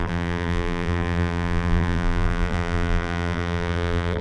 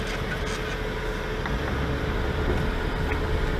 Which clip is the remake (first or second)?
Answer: first